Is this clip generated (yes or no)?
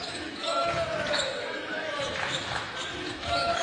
yes